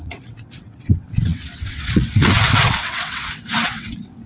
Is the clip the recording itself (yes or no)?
no